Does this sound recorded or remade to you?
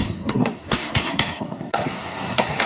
remade